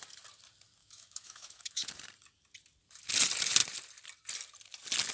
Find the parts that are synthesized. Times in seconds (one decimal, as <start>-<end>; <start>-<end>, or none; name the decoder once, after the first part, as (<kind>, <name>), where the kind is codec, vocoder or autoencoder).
0.8-1.9 (autoencoder, DAC-VAE)